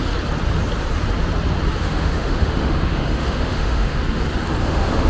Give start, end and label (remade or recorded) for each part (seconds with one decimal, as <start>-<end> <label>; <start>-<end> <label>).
0.0-1.8 recorded; 1.8-4.0 remade; 4.0-4.6 recorded; 4.6-5.1 remade